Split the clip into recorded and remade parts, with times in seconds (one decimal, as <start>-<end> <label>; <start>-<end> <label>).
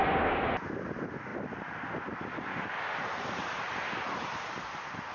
0.0-5.1 remade